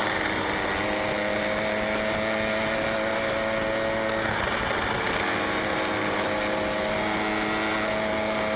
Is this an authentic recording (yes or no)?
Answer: yes